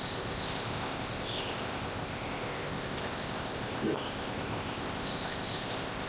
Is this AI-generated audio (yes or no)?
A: yes